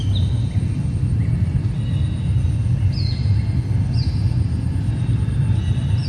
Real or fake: real